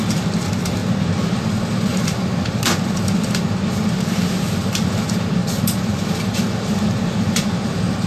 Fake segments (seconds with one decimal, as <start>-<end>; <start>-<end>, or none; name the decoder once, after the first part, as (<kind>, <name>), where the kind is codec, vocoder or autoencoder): 0.0-0.8 (vocoder, BigVGAN v2); 1.9-8.1